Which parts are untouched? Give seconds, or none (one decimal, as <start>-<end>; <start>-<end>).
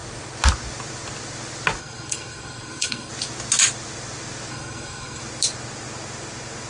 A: 0.0-1.8; 3.1-4.5; 5.2-6.7